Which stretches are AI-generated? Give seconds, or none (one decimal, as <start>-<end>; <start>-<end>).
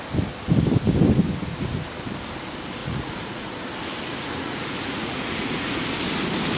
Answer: 2.8-3.6; 4.1-5.8